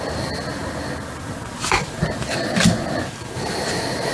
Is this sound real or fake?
real